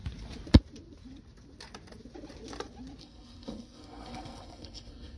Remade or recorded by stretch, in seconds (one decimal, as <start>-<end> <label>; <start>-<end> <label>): 0.0-3.0 recorded; 3.0-5.2 remade